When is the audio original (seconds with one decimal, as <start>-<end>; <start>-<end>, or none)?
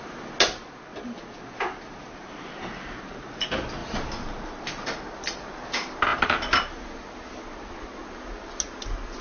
0.0-0.9; 3.4-3.8; 4.6-6.1; 6.8-9.2